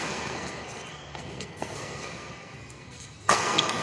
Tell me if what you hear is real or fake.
fake